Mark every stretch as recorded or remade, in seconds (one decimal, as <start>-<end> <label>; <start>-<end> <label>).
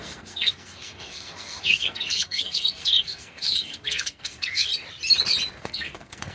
0.0-4.7 remade; 4.7-5.6 recorded; 5.6-6.3 remade